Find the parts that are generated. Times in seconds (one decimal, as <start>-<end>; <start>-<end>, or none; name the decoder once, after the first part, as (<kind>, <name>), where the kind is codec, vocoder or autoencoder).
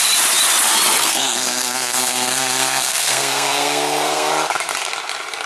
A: 1.0-4.3 (codec, SNAC)